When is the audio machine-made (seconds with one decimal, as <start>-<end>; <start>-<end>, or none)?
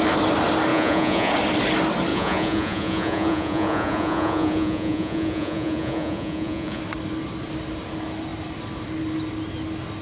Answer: 0.7-1.3; 2.1-6.8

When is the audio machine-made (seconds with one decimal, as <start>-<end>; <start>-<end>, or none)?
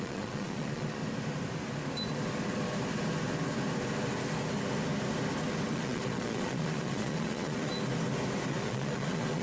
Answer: 0.0-1.0; 5.7-7.7; 8.5-9.4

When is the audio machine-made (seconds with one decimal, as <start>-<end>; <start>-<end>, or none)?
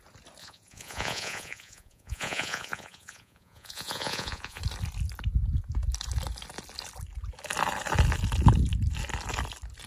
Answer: 0.4-4.6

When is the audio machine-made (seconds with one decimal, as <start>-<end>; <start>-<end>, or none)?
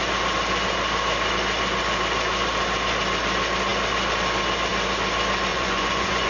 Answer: 5.5-6.3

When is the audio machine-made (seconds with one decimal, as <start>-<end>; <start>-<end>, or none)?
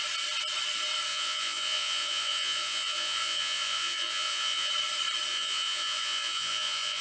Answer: 1.1-4.7; 5.3-7.0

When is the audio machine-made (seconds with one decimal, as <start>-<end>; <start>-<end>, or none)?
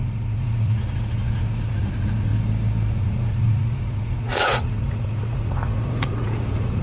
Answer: 0.0-2.3; 2.9-6.8